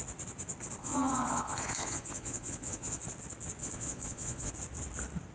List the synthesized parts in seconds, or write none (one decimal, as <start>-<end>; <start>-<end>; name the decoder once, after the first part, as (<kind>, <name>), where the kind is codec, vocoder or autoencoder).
0.8-3.0 (vocoder, Vocos); 3.6-4.5